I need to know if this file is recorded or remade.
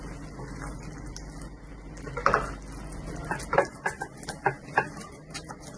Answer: recorded